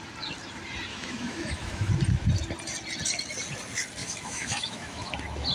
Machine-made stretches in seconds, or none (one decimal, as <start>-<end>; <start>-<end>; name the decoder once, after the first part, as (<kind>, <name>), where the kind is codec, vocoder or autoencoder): 0.9-1.9 (autoencoder, DAC-VAE); 4.0-5.1